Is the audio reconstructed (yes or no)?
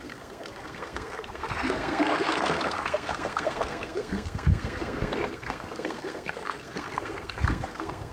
yes